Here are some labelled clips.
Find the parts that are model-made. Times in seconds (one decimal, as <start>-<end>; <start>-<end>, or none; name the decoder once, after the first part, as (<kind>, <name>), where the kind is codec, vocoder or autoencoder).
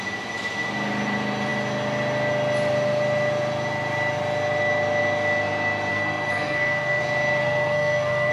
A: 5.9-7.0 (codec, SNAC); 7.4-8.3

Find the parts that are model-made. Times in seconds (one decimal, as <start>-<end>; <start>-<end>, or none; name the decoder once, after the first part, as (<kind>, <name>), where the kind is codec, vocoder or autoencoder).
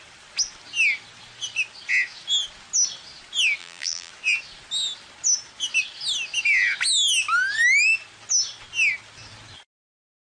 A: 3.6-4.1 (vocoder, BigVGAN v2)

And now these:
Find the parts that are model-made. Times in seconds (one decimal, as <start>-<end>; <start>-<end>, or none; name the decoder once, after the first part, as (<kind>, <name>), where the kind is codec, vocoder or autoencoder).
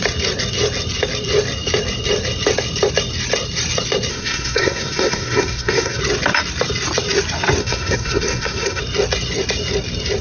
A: 4.1-6.0 (codec, SNAC); 7.6-8.8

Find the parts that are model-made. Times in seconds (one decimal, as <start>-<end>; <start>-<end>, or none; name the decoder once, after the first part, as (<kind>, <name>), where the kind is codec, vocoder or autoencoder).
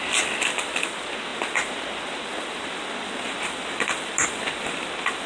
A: none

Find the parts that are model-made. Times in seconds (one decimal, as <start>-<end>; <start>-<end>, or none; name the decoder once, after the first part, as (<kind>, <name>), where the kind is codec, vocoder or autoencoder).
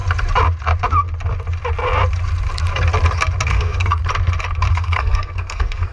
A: 3.5-4.0 (codec, SNAC); 4.7-5.9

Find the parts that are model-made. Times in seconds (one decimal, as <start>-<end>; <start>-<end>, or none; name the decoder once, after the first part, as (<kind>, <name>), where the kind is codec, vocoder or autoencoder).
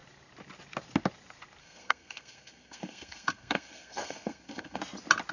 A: 1.6-4.8 (codec, SNAC)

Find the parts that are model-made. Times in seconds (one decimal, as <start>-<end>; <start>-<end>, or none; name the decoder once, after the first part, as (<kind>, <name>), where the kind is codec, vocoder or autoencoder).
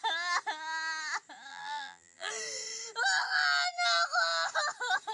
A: 1.5-2.3 (vocoder, BigVGAN v2)